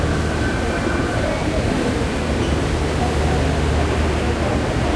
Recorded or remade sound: recorded